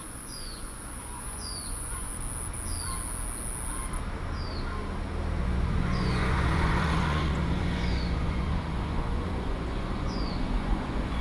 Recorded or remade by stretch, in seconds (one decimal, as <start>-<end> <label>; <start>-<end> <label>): 0.0-2.1 remade; 2.1-5.4 recorded; 5.4-11.2 remade